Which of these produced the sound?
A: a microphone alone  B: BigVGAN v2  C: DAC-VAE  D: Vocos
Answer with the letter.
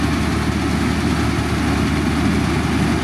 A